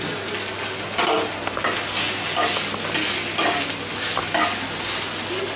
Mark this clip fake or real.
real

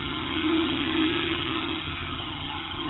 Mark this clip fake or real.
fake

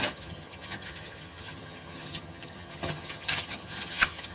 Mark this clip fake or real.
fake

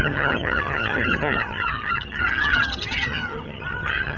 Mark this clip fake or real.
fake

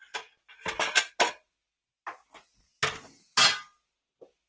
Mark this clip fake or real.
real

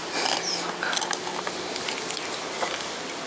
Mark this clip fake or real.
real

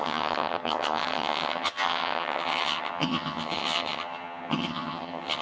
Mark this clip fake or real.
fake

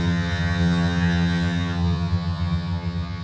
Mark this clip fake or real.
fake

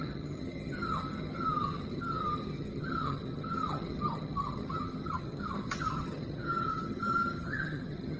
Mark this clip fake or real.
fake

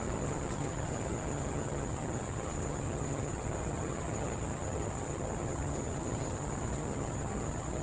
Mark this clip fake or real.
fake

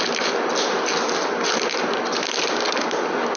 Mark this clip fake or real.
real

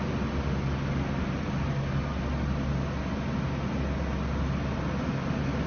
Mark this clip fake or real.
real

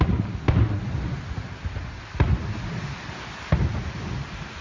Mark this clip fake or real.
real